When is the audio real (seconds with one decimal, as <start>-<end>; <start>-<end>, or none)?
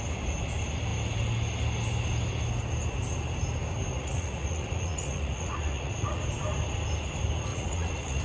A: 0.0-3.9; 6.2-7.5